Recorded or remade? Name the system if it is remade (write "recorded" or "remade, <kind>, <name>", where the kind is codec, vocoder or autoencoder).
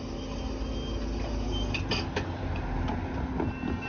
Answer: recorded